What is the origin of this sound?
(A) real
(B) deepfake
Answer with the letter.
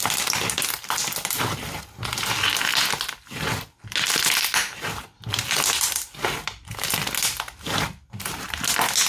A